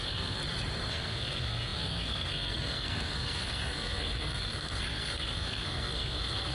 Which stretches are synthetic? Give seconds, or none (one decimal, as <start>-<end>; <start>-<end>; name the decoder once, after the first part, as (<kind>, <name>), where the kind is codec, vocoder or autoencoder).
0.0-0.4 (codec, SNAC); 0.9-6.5